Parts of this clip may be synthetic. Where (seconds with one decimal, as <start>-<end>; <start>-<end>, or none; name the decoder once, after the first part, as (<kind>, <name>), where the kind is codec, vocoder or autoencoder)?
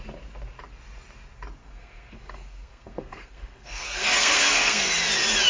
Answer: 1.6-4.9 (codec, SNAC)